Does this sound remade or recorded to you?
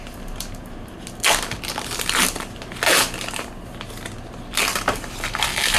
recorded